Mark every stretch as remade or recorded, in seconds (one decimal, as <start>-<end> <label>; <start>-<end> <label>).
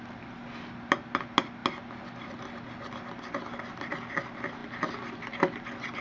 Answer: 0.0-6.0 recorded